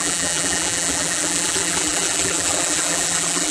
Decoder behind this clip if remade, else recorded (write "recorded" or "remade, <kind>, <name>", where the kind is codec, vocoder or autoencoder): remade, vocoder, BigVGAN v2